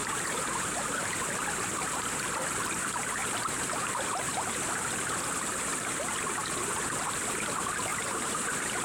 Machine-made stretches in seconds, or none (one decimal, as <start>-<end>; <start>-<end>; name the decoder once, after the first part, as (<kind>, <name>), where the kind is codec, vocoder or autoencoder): 0.0-1.2 (vocoder, BigVGAN v2); 3.2-4.7; 5.7-6.6; 7.9-8.8